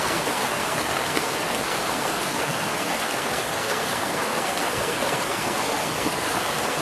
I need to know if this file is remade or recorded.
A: remade